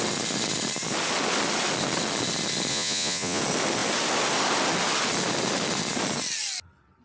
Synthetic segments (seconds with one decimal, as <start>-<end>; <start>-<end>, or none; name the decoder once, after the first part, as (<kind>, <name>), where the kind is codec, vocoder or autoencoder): 2.7-3.4 (vocoder, Vocos)